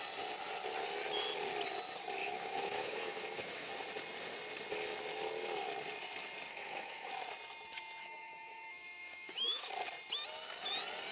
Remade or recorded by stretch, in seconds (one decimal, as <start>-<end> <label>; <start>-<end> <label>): 0.0-2.2 recorded; 2.2-3.7 remade; 3.7-6.5 recorded; 6.5-7.1 remade; 7.1-8.0 recorded; 8.0-9.7 remade; 9.7-11.1 recorded